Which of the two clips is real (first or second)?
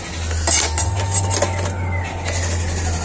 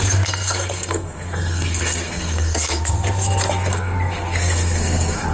first